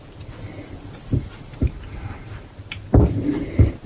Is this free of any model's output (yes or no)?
yes